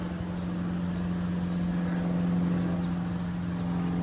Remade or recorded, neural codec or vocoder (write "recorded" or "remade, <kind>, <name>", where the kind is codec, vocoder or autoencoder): recorded